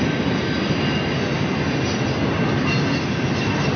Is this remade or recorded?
recorded